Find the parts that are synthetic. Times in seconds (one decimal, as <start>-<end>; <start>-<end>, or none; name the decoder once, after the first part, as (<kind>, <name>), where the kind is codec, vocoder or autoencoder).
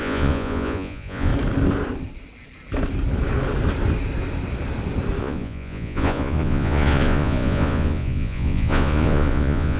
0.0-1.3 (vocoder, Vocos); 5.2-9.8